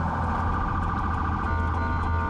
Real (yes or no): yes